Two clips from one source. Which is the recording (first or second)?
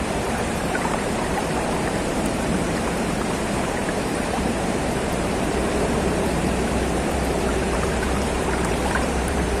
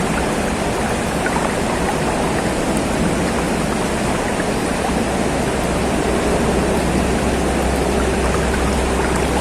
second